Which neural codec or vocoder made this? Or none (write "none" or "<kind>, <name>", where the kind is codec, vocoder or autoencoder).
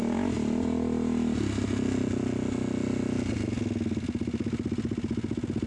none